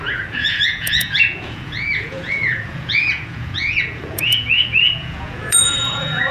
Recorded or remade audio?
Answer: remade